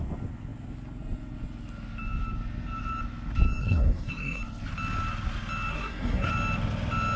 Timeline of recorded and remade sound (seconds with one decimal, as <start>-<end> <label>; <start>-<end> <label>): 0.0-3.6 recorded; 3.6-4.4 remade; 4.4-5.7 recorded; 5.7-6.3 remade; 6.3-7.2 recorded